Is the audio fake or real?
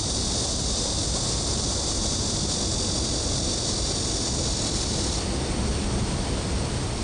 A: real